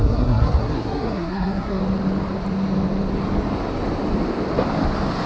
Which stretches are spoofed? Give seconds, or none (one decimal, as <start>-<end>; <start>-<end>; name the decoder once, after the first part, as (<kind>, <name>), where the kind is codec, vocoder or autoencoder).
0.0-1.8 (codec, SNAC)